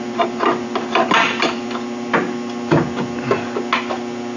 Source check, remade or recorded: recorded